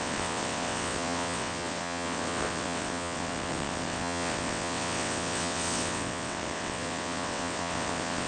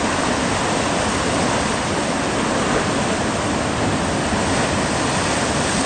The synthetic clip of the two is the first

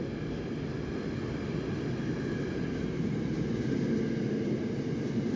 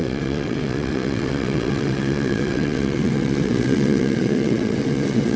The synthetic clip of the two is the second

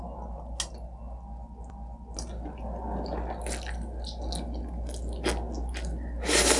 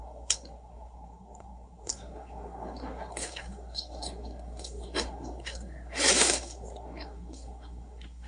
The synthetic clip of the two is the second